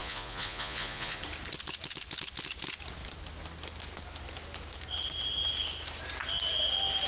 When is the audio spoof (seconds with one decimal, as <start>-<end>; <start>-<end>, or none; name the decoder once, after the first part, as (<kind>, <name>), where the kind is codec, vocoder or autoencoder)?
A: 0.0-1.2 (vocoder, Vocos)